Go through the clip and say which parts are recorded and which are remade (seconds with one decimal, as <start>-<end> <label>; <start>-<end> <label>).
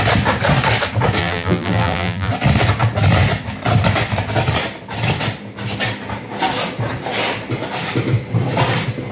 0.0-1.2 recorded; 1.2-2.3 remade; 2.3-9.1 recorded